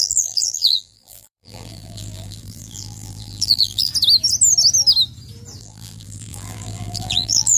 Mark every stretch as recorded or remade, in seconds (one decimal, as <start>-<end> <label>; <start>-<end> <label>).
0.0-3.9 remade; 3.9-5.6 recorded; 5.6-7.6 remade